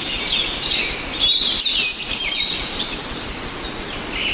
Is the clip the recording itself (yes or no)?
yes